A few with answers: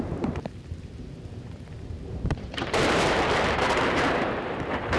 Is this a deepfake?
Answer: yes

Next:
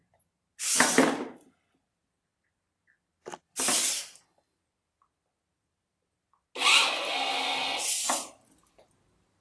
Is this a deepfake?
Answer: no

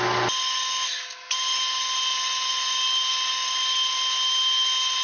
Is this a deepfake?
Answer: no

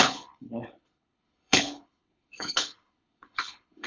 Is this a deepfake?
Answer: yes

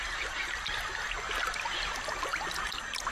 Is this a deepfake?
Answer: no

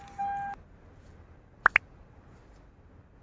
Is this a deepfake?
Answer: no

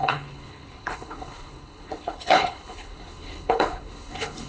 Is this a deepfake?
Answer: yes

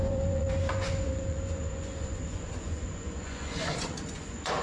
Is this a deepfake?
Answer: yes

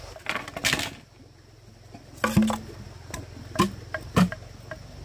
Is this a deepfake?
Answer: no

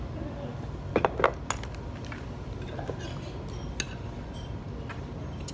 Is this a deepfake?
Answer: no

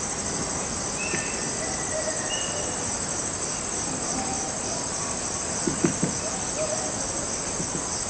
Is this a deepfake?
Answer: no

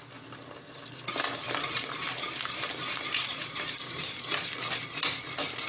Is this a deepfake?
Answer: no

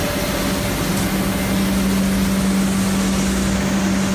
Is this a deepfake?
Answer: no